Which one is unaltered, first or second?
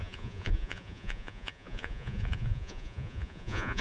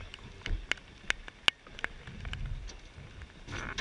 second